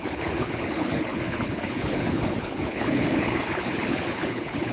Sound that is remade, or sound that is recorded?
remade